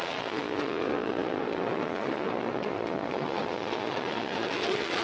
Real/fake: fake